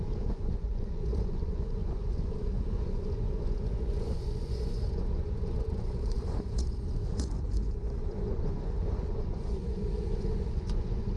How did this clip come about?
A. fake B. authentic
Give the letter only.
A